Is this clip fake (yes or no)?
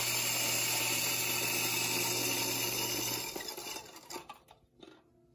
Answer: no